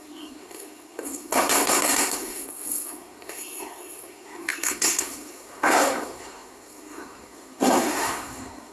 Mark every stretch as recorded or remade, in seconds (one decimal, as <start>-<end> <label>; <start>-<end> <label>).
0.0-8.7 remade